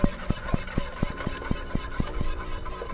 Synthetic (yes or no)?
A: no